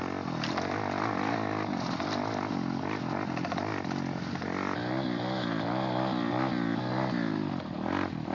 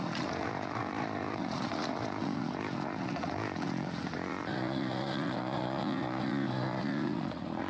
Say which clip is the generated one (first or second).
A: second